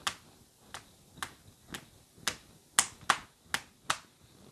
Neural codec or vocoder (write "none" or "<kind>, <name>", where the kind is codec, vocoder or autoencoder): none